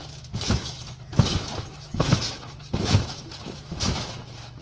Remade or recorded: remade